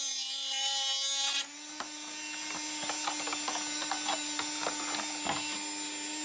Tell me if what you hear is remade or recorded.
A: recorded